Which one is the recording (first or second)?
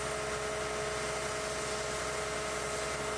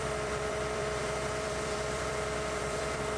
first